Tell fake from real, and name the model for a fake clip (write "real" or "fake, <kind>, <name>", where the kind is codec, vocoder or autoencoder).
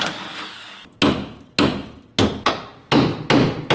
real